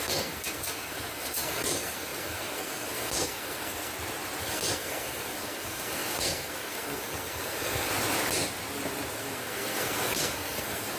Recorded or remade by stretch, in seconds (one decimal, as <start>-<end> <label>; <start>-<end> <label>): 0.0-3.9 remade; 3.9-4.4 recorded; 4.4-7.9 remade; 7.9-9.1 recorded; 9.1-11.0 remade